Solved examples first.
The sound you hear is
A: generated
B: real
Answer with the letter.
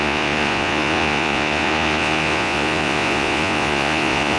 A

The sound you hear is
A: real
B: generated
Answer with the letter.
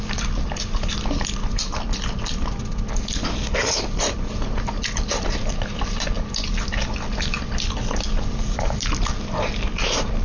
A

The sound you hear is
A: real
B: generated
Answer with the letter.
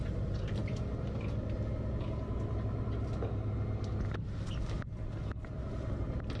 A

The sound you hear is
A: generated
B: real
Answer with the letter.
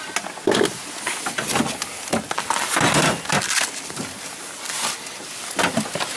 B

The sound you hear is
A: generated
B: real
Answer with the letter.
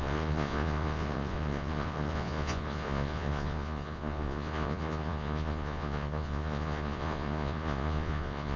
A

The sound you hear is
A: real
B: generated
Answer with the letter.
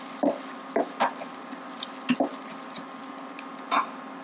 A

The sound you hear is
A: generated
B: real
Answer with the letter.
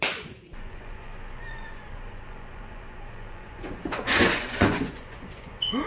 A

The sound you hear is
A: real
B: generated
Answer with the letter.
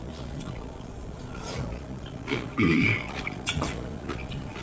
B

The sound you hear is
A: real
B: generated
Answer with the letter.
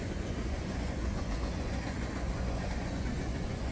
B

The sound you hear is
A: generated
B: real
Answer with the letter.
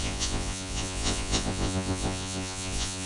A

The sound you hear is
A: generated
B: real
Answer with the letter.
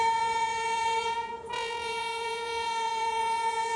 A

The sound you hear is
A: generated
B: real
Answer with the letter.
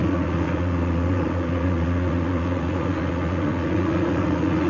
A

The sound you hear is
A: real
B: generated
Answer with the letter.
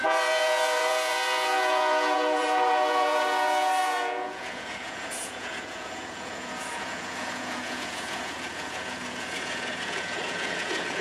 B